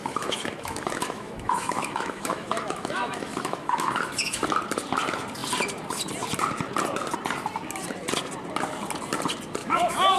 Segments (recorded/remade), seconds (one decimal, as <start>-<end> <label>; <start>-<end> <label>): 0.0-4.4 remade; 4.4-9.6 recorded; 9.6-10.2 remade